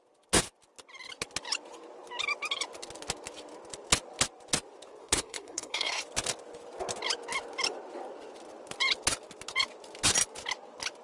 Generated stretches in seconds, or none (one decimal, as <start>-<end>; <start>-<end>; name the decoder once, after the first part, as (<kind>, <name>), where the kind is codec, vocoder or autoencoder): 5.0-6.0 (codec, SNAC)